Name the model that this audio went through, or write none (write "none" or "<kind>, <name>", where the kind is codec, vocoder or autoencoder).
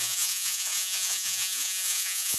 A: vocoder, Vocos